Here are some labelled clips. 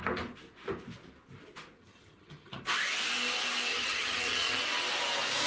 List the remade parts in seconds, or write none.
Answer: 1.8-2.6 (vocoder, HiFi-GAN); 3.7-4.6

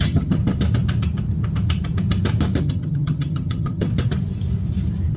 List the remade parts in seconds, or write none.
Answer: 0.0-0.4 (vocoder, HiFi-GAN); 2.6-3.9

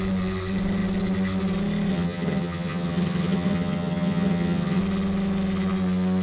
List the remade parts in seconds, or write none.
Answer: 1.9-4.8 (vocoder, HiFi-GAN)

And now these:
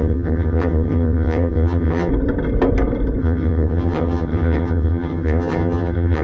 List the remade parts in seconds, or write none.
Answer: 0.0-2.1 (vocoder, HiFi-GAN); 3.2-6.2